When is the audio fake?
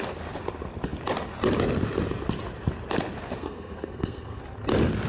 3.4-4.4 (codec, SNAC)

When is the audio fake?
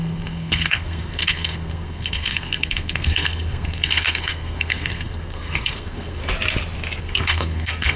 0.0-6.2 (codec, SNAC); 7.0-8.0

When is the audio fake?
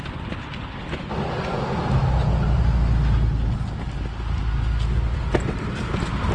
none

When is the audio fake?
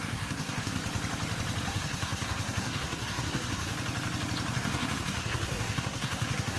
0.0-0.8 (codec, SNAC); 1.7-3.7; 4.5-6.6